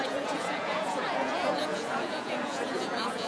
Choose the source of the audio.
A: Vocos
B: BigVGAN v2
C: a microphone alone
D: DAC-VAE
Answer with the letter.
A